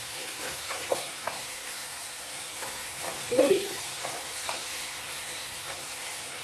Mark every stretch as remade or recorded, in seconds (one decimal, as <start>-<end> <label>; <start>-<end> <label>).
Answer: 0.0-6.4 remade